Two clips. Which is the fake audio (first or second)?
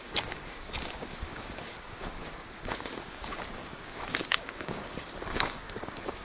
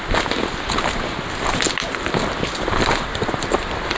first